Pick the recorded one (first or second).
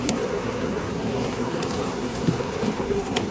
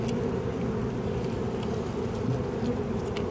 second